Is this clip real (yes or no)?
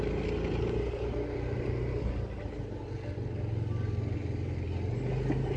yes